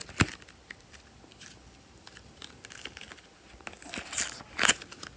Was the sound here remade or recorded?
recorded